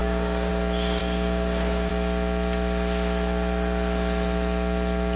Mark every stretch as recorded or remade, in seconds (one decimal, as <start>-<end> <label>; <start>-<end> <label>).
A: 0.0-0.5 remade; 0.5-1.0 recorded; 1.0-1.9 remade; 1.9-5.2 recorded